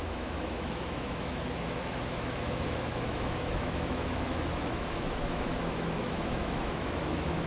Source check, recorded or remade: remade